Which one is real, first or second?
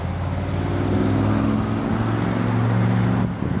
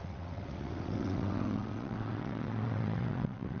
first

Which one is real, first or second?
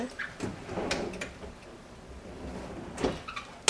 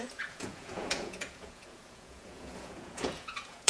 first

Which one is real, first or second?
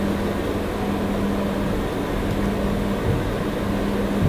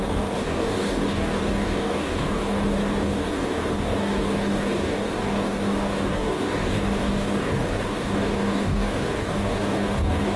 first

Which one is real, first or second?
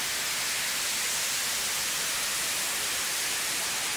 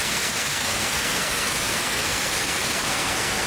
first